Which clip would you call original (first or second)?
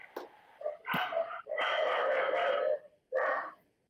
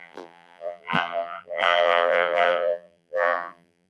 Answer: first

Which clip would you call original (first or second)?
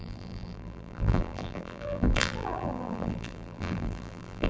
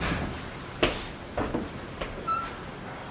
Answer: second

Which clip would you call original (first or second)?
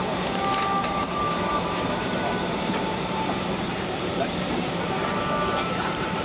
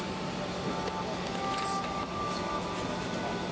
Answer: second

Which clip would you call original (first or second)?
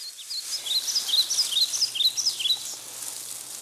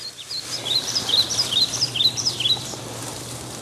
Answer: first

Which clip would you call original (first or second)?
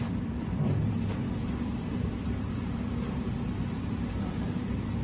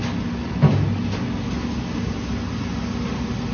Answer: second